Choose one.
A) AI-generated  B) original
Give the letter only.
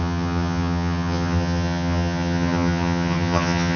A